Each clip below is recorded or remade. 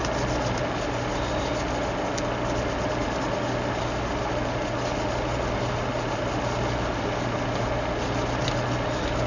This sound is recorded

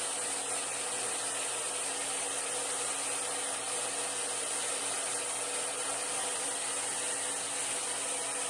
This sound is recorded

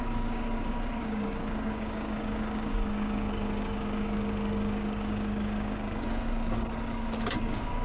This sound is remade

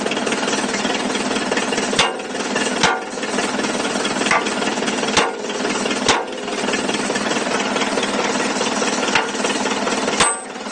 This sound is recorded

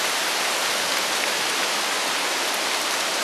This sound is recorded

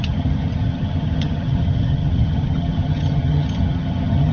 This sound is remade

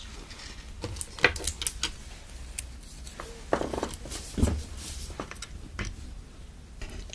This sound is recorded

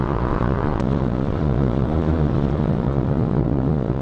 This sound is remade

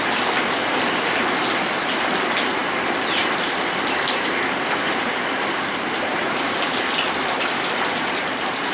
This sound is remade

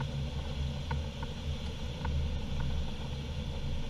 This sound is recorded